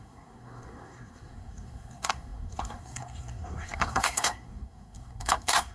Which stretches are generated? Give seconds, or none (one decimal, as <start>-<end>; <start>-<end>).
0.0-5.7